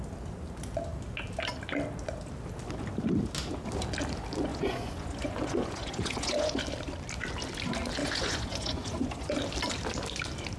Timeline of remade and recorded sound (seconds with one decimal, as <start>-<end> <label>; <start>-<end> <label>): 0.0-4.5 recorded; 4.5-6.6 remade; 6.6-8.0 recorded; 8.0-9.4 remade; 9.4-10.6 recorded